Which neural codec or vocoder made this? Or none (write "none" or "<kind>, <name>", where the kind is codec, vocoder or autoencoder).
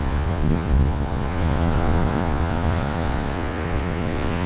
vocoder, Vocos